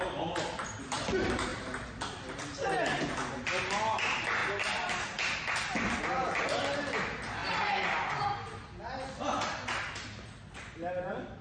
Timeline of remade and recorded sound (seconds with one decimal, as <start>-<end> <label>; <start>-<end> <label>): 0.0-11.4 recorded

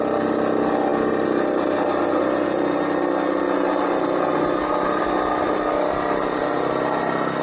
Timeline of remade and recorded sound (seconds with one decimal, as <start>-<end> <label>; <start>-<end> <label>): 0.0-7.4 recorded

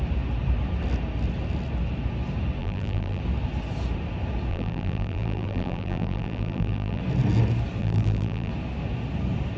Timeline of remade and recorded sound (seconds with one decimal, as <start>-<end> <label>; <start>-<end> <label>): 0.0-2.6 recorded; 2.6-3.2 remade; 3.2-4.5 recorded; 4.5-7.0 remade; 7.0-7.8 recorded; 7.8-8.5 remade; 8.5-9.6 recorded

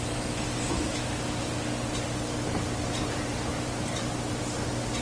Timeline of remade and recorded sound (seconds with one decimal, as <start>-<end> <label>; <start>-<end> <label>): 0.0-3.5 recorded; 3.5-4.0 remade; 4.0-5.0 recorded

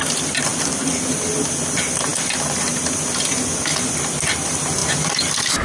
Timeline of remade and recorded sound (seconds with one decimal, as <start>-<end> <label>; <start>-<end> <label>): 0.0-5.6 recorded